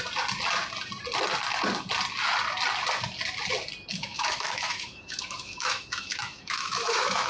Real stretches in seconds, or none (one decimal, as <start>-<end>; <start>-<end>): 0.0-3.9